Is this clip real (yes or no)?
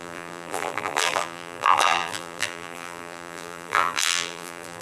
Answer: no